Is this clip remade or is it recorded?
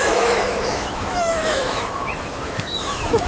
remade